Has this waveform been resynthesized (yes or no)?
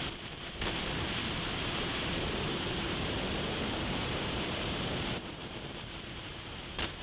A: yes